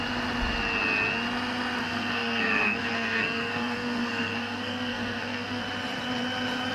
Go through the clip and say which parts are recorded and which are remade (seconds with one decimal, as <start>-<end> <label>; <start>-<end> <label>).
0.0-1.8 recorded; 1.8-5.6 remade; 5.6-6.7 recorded